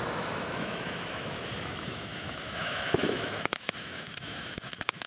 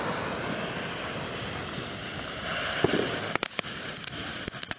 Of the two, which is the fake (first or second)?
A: first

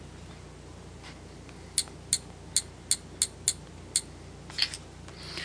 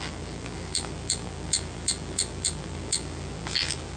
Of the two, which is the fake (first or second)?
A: second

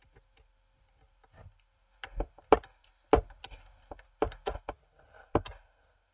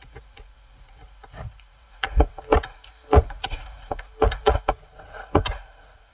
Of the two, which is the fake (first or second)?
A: second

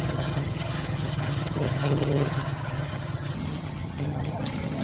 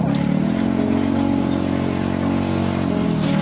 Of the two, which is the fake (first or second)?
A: first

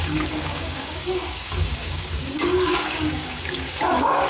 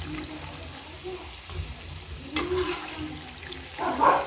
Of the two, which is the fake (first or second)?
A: first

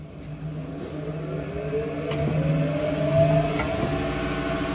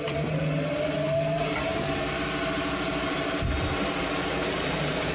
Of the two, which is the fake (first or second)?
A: second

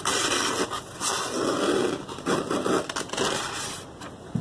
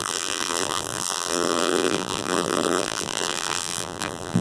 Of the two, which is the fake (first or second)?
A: second